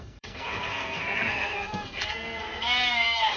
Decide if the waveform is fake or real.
fake